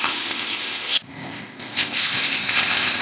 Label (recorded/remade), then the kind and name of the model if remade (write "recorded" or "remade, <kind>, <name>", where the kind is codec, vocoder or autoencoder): remade, codec, ZipCodec